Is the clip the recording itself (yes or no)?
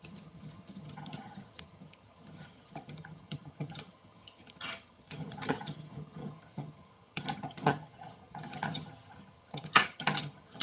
no